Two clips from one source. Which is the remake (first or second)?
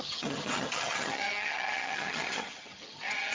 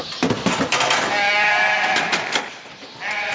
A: first